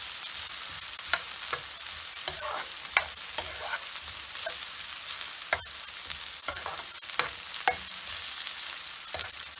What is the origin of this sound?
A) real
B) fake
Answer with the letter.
A